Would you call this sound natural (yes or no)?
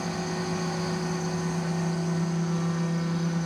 yes